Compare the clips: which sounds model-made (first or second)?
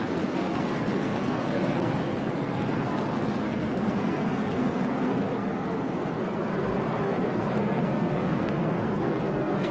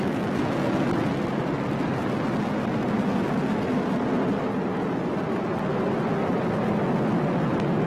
first